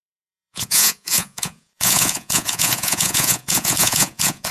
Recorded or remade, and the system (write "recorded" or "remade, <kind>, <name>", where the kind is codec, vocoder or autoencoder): remade, vocoder, Vocos